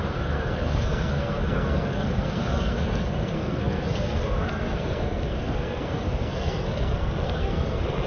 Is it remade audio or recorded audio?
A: remade